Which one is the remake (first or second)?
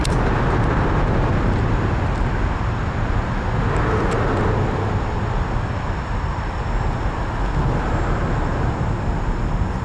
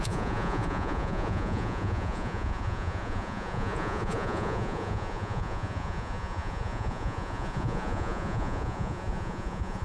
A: second